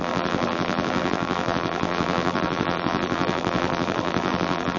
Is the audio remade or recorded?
remade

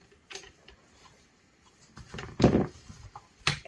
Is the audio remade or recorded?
remade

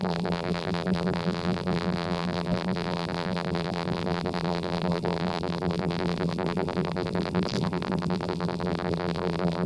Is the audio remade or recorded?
remade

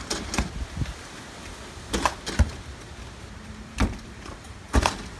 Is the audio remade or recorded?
recorded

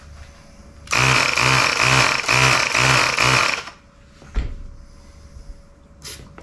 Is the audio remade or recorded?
recorded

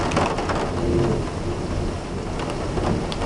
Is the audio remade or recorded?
recorded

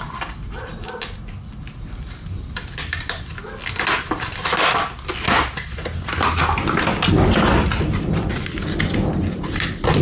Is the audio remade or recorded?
recorded